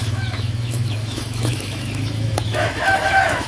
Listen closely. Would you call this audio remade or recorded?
remade